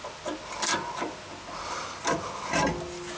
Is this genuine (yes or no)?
yes